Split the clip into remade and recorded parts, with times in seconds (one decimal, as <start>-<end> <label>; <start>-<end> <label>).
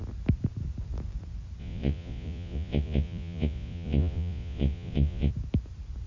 0.0-1.6 recorded; 1.6-5.3 remade; 5.3-6.1 recorded